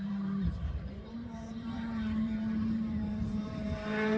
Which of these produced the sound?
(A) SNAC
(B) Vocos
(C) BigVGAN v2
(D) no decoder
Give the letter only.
C